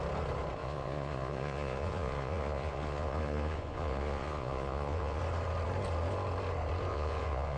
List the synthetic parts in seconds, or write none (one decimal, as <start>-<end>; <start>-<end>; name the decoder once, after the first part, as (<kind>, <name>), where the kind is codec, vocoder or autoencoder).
0.6-5.2 (vocoder, Vocos); 6.9-7.6